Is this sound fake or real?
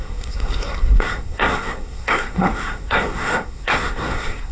fake